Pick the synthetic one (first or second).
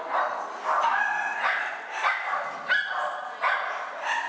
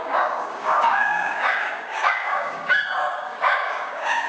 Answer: second